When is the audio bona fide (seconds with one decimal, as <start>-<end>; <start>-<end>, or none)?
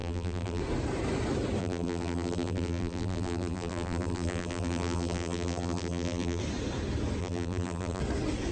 0.6-1.6; 6.4-7.2; 8.0-8.5